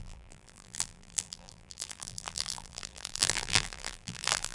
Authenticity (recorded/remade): remade